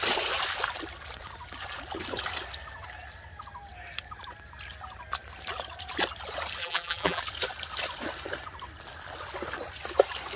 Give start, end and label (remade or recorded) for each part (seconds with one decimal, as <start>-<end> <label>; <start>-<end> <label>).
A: 0.0-6.6 recorded; 6.6-7.2 remade; 7.2-10.4 recorded